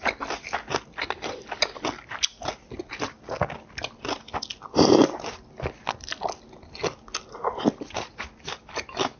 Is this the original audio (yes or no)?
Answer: yes